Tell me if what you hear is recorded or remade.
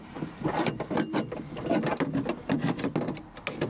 recorded